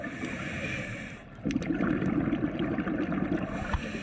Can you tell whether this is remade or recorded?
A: recorded